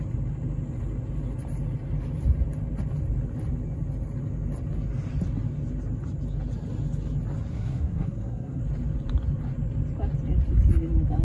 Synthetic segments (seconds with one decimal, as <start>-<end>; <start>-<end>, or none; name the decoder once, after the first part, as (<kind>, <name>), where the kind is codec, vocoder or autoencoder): 7.5-8.6 (codec, SNAC)